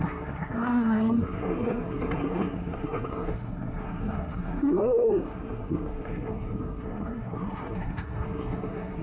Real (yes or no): no